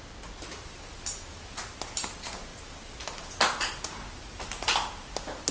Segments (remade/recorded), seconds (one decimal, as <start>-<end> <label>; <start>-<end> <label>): 0.0-5.5 recorded